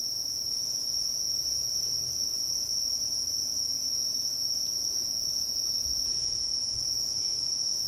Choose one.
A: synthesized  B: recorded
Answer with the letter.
A